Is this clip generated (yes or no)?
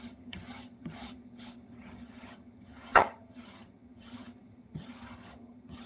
yes